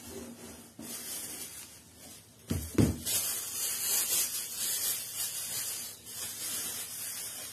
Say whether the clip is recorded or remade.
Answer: recorded